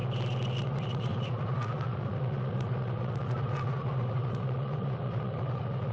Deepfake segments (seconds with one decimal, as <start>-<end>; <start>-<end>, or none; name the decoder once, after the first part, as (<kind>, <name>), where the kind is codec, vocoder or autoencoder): 0.6-5.9 (vocoder, Vocos)